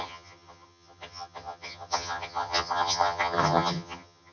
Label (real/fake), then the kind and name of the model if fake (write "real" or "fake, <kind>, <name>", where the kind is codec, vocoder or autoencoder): fake, vocoder, HiFi-GAN